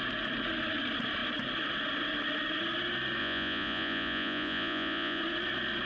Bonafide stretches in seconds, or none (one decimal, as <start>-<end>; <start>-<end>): 0.0-3.2; 5.2-5.9